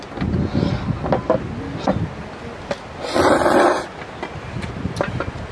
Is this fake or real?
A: real